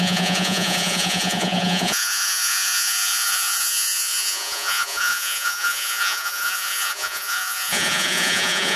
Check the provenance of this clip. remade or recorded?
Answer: remade